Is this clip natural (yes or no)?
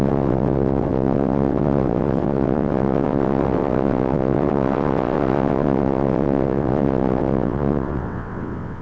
no